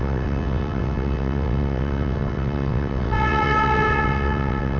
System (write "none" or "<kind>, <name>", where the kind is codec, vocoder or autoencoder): vocoder, WaveNeXt